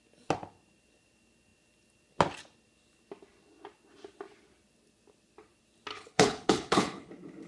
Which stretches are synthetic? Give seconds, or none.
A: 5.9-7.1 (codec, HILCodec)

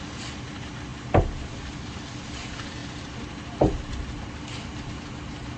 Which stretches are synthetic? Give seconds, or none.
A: none

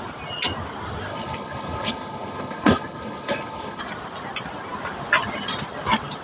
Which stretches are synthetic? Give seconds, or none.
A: 1.1-3.8 (codec, HILCodec)